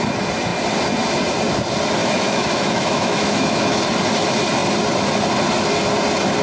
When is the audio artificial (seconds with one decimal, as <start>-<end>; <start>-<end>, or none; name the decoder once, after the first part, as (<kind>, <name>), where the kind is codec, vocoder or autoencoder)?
2.0-3.8 (autoencoder, DAC-VAE)

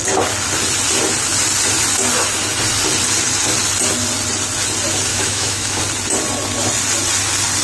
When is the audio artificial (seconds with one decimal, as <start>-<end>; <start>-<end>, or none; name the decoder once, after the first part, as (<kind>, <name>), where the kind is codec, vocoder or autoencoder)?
5.1-5.8 (autoencoder, DAC-VAE)

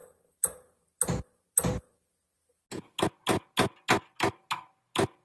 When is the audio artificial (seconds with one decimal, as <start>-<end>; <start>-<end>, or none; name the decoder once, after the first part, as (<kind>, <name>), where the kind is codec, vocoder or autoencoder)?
none

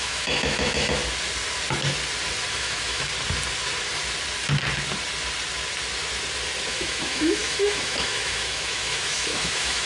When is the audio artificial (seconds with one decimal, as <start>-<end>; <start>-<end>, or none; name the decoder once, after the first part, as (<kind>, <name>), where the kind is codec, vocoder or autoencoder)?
0.0-1.0 (autoencoder, DAC-VAE); 2.5-3.1; 6.7-9.9

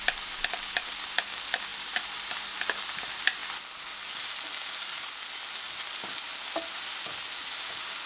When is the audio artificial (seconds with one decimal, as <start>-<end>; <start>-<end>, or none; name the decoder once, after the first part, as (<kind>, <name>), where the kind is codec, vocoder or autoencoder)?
none